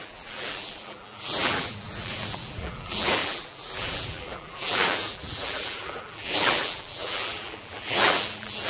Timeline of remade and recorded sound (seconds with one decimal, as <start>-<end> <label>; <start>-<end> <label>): 0.0-8.7 remade